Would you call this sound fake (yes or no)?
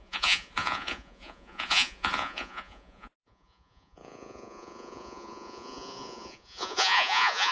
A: yes